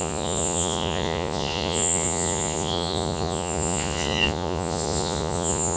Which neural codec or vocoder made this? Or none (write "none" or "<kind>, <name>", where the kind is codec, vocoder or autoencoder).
vocoder, Vocos